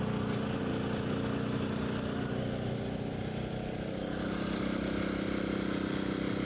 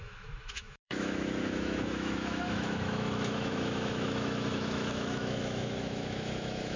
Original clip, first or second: first